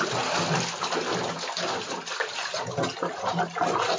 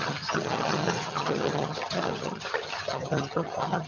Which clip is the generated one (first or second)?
second